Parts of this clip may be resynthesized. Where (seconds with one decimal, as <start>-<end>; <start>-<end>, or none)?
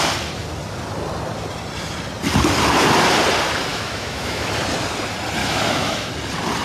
3.7-4.5; 5.4-6.1